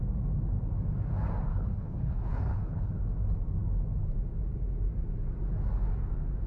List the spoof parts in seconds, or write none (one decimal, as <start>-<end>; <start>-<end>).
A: 1.5-2.9